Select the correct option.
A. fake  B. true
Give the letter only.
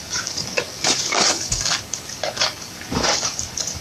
A